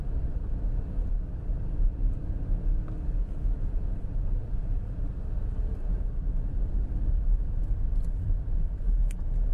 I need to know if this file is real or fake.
fake